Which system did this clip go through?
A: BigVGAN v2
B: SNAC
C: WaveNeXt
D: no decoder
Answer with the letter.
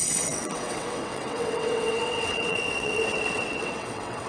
C